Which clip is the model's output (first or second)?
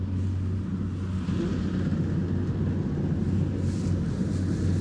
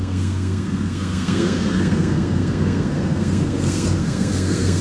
second